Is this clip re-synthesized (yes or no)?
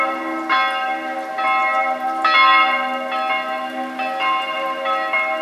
no